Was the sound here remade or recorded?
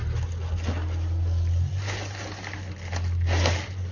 recorded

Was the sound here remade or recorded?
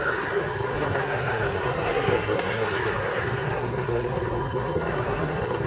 remade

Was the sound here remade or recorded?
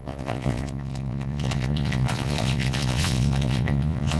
remade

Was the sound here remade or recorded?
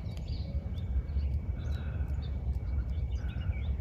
remade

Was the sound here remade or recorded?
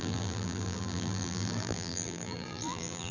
remade